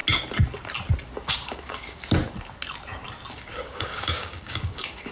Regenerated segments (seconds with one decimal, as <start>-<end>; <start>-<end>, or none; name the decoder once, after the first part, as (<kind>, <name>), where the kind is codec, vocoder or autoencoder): 1.3-2.0 (codec, DAC); 3.3-5.1